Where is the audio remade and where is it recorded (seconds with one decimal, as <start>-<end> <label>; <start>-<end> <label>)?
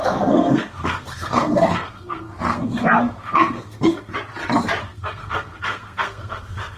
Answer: 0.0-4.1 remade; 4.1-4.8 recorded; 4.8-6.8 remade